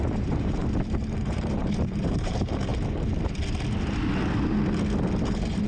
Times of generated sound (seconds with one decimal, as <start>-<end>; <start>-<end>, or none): 0.0-2.7; 5.2-5.7